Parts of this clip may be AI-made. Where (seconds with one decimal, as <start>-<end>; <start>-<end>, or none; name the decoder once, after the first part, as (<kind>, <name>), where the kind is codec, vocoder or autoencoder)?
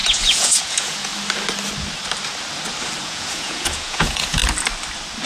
0.0-1.1 (vocoder, Vocos); 3.0-4.4